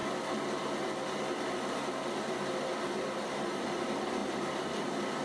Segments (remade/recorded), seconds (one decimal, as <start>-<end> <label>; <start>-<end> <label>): 0.0-5.2 recorded